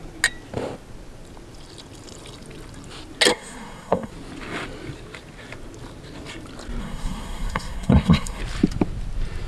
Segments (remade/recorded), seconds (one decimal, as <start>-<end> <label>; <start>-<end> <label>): 0.0-3.3 recorded; 3.3-4.1 remade; 4.1-6.8 recorded; 6.8-8.4 remade; 8.4-9.5 recorded